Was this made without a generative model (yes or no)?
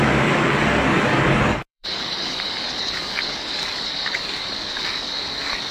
no